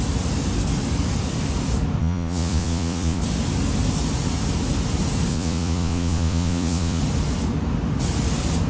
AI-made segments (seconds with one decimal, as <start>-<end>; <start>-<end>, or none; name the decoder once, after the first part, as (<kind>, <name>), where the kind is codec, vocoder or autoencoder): 2.0-3.2 (vocoder, Vocos); 5.3-7.0